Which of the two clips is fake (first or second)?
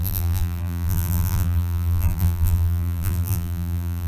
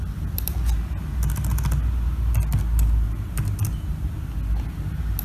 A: first